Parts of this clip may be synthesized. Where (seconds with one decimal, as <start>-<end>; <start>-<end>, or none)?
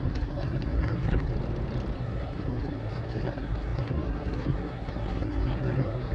0.0-1.3; 2.0-6.1